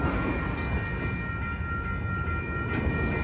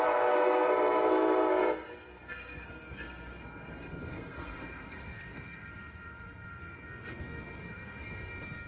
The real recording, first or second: first